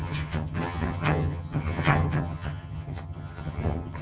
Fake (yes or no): yes